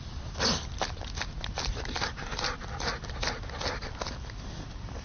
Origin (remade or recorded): recorded